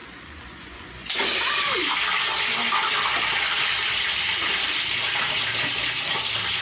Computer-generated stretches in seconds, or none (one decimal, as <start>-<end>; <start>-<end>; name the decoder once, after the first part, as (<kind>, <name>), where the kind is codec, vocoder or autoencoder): 0.0-1.2 (vocoder, Vocos)